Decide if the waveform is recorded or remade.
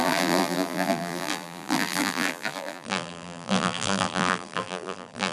remade